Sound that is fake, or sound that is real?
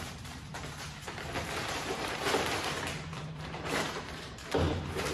fake